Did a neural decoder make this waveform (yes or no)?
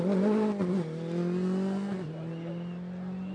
no